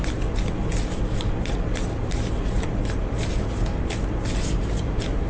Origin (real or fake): real